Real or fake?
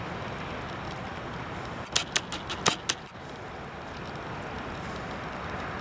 real